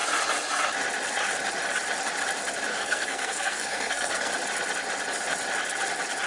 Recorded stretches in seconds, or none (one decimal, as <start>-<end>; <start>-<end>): 0.0-2.7; 4.3-6.3